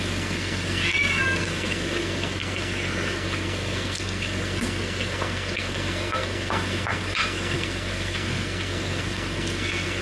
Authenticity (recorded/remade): remade